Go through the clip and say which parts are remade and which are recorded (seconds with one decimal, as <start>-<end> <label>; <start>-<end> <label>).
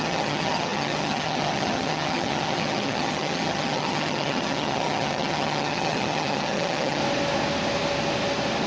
0.0-7.0 remade; 7.0-8.7 recorded